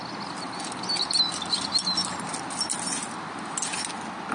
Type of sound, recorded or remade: recorded